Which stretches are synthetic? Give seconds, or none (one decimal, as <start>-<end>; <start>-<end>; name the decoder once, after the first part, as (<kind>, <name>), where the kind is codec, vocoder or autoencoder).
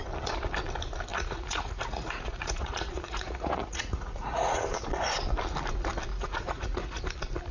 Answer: 1.1-4.6 (vocoder, Vocos); 6.1-7.0